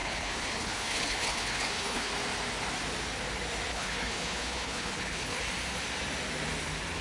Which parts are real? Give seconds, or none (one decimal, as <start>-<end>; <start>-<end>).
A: 2.1-3.7; 5.4-7.0